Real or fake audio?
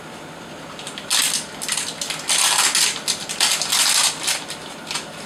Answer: real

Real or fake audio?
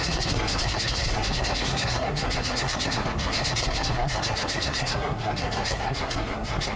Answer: fake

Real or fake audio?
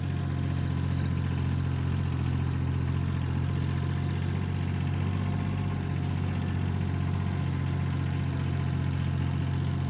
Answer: real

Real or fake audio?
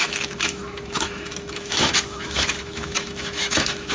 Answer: fake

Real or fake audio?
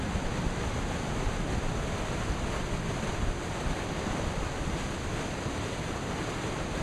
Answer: real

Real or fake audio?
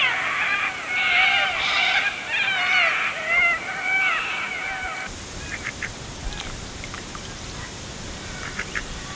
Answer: real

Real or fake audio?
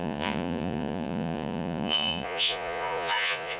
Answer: fake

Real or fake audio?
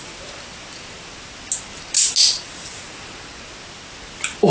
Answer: real